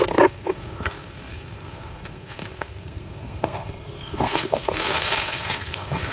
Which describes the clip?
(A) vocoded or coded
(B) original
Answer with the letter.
A